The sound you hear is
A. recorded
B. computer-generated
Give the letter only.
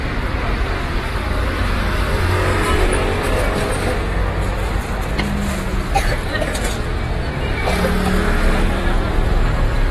A